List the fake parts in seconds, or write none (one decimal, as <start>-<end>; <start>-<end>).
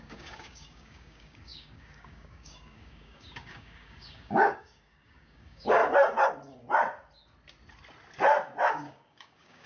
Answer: 0.0-5.8; 8.7-9.7